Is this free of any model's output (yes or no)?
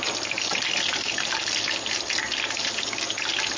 yes